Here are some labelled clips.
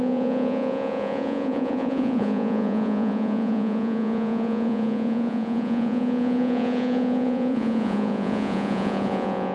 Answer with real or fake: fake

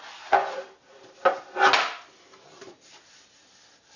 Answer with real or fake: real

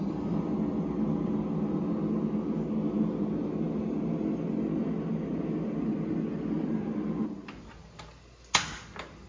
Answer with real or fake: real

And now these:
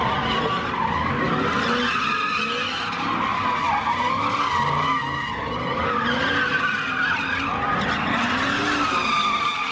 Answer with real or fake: real